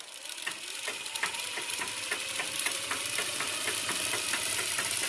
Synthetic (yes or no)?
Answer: no